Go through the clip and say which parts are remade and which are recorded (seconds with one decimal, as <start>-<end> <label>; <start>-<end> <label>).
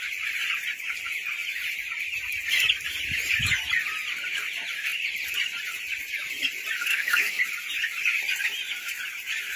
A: 0.0-6.9 recorded; 6.9-7.4 remade; 7.4-9.6 recorded